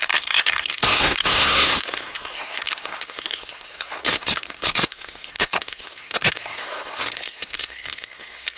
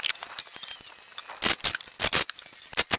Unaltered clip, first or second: second